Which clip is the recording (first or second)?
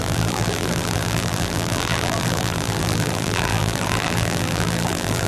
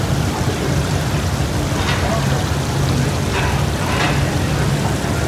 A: second